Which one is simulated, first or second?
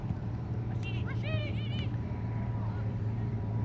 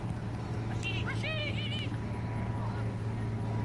first